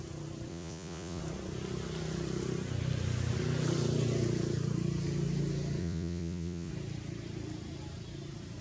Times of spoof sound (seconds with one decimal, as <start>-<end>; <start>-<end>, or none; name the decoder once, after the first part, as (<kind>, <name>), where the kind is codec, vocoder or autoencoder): 0.5-1.2 (vocoder, Vocos); 5.8-6.7